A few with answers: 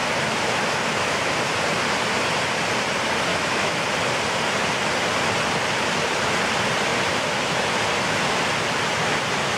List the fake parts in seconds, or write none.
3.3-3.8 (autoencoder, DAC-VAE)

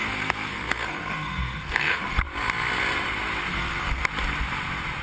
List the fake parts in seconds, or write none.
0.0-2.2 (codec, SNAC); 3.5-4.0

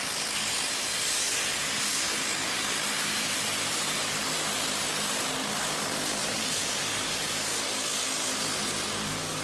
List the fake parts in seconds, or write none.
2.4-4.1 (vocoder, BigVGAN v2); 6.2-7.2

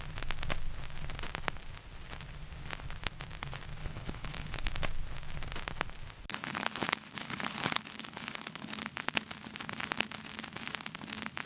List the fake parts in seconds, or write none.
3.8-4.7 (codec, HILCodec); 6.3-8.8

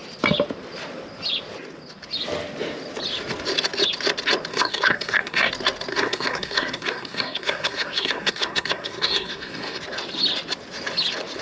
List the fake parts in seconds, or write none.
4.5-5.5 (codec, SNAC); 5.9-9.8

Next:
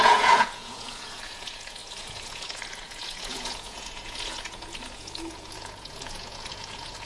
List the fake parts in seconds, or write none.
0.0-7.1 (vocoder, Vocos)